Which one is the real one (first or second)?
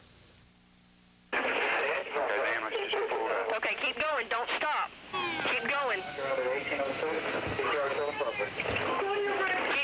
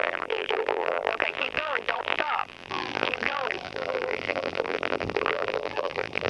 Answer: first